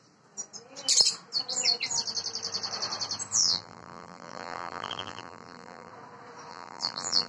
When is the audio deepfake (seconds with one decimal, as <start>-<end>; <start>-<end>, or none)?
3.4-5.9; 6.5-7.3